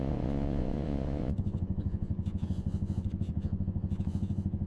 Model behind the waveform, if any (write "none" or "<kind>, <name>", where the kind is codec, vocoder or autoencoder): vocoder, Vocos